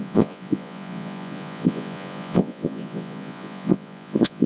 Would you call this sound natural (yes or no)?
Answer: no